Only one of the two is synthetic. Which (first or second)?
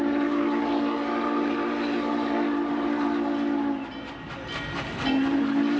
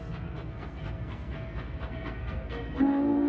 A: second